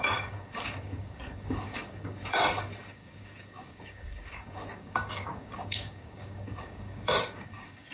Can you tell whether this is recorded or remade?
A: remade